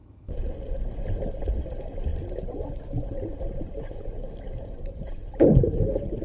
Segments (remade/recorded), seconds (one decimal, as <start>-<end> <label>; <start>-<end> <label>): 0.0-1.5 recorded; 1.5-2.1 remade; 2.1-4.6 recorded; 4.6-5.2 remade; 5.2-6.2 recorded